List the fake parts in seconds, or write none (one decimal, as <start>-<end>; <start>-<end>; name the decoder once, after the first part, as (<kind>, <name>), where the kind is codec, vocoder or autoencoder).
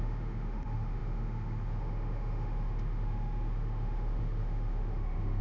0.0-5.4 (autoencoder, DAC-VAE)